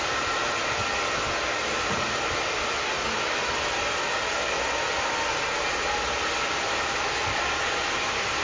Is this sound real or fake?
real